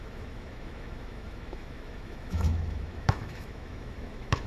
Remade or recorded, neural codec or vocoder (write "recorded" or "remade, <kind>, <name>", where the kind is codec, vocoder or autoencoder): remade, autoencoder, DAC-VAE